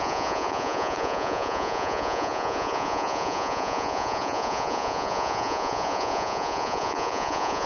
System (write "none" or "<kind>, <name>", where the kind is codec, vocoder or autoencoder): vocoder, Vocos